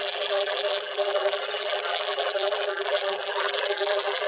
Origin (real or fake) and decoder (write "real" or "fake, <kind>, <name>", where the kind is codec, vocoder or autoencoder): fake, vocoder, BigVGAN v2